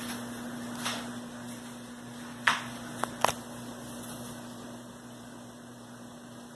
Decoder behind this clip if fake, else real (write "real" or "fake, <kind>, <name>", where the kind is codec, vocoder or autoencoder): real